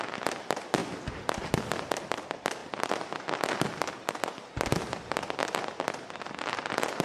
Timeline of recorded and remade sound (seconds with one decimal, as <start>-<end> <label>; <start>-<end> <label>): 0.0-7.0 recorded